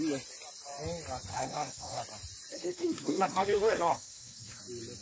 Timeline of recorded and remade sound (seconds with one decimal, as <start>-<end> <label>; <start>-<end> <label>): 0.0-1.3 recorded; 1.3-2.0 remade; 2.0-2.5 recorded; 2.5-4.6 remade; 4.6-5.0 recorded